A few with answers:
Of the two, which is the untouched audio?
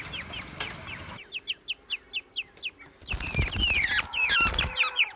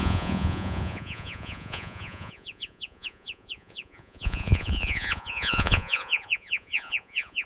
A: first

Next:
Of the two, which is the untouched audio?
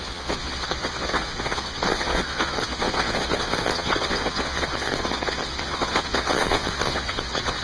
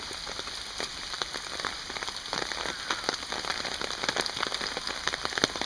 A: second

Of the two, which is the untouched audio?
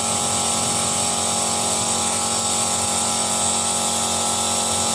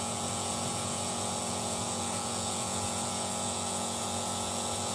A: first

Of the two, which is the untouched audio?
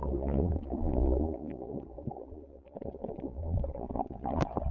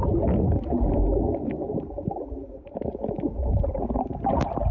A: second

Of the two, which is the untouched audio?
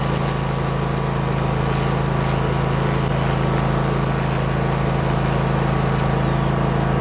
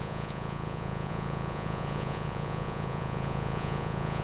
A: first